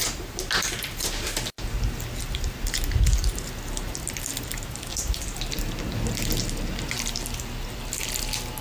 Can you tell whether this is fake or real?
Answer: real